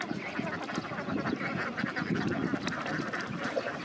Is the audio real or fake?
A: real